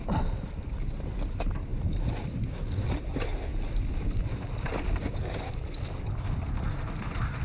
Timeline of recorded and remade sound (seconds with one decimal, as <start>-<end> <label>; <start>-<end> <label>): 0.0-7.4 recorded

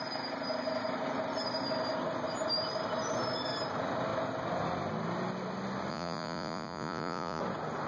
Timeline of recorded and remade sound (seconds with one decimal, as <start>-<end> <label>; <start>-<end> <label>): 0.0-5.9 recorded; 5.9-7.4 remade; 7.4-7.9 recorded

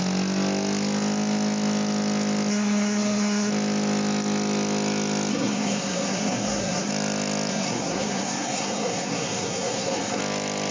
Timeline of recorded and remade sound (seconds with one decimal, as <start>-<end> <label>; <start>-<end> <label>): 0.0-2.5 recorded; 2.5-3.5 remade; 3.5-5.3 recorded; 5.3-6.9 remade; 6.9-7.5 recorded; 7.5-10.2 remade; 10.2-10.7 recorded